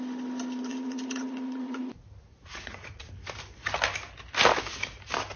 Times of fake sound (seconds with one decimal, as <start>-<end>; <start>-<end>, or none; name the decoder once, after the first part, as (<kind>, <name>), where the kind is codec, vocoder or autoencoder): 0.7-1.9 (vocoder, Vocos); 2.3-3.1